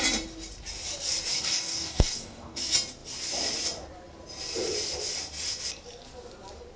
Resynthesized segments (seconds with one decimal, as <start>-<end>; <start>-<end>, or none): 1.3-2.6